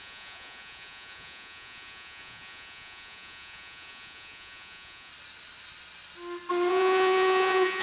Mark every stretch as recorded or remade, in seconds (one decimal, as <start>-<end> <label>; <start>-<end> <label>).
0.0-5.1 remade; 5.1-6.7 recorded; 6.7-7.8 remade